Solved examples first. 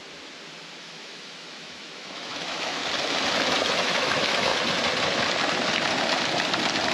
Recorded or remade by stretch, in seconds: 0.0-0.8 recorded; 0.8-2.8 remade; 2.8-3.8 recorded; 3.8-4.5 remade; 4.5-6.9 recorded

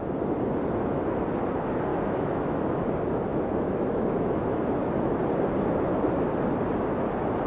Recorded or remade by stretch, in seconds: 0.0-1.9 recorded; 1.9-2.8 remade; 2.8-3.3 recorded; 3.3-4.6 remade; 4.6-7.5 recorded

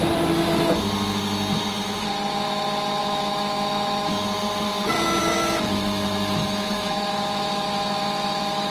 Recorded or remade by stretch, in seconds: 0.0-3.0 recorded; 3.0-4.1 remade; 4.1-5.2 recorded; 5.2-8.7 remade

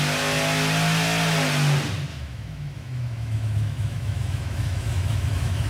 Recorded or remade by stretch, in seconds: 0.0-2.1 recorded; 2.1-5.7 remade

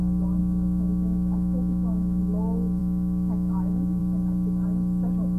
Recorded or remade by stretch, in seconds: 0.0-0.4 recorded; 0.4-2.2 remade; 2.2-2.8 recorded; 2.8-4.0 remade; 4.0-5.4 recorded